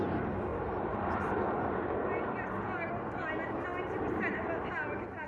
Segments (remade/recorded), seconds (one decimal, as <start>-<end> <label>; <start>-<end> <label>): 0.0-5.3 recorded

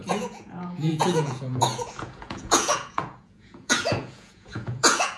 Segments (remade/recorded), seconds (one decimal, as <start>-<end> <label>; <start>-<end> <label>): 0.0-5.2 remade